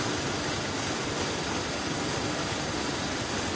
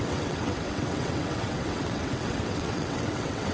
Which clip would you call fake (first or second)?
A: second